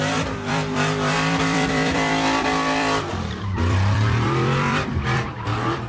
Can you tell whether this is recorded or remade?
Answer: remade